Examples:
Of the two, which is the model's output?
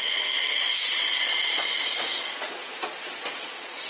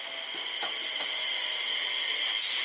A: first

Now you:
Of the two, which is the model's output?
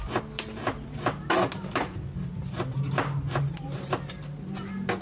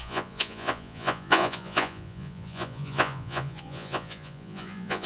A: second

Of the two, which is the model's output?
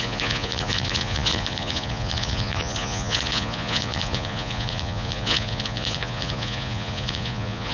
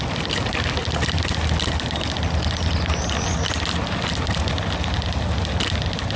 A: first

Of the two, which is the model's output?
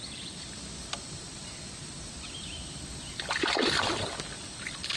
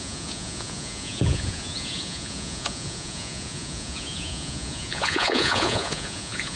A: second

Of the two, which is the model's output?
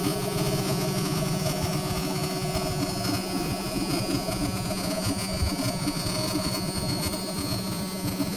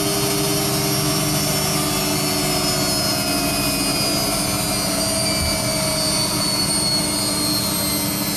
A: first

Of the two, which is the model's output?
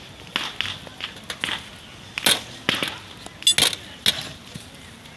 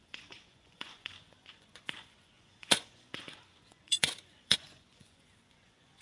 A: second